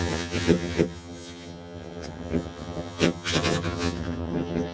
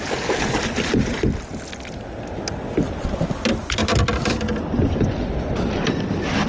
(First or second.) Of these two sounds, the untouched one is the second